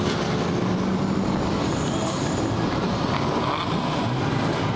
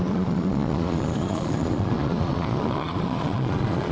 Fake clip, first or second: second